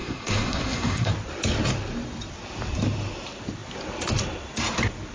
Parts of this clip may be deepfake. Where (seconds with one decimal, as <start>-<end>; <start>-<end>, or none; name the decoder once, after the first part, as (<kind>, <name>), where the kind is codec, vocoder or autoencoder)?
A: 0.0-1.1 (codec, SNAC)